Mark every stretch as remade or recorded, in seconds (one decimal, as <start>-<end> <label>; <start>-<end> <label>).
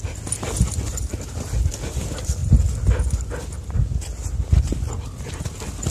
0.0-5.9 recorded